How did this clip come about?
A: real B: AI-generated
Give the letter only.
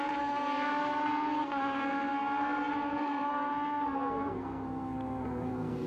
B